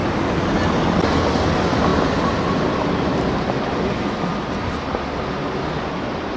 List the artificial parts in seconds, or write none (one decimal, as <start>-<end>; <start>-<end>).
none